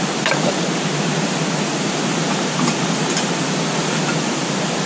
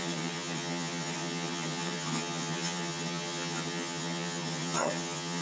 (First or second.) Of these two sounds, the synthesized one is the second